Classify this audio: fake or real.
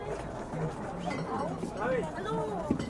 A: real